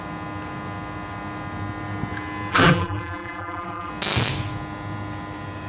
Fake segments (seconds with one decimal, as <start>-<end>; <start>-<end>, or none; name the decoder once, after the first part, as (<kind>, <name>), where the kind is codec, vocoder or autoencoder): 2.5-3.9 (vocoder, BigVGAN v2)